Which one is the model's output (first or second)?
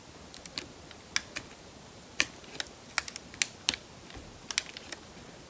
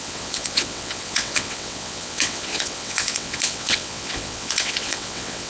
second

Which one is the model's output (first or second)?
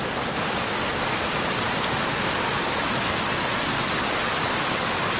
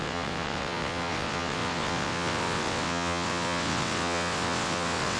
second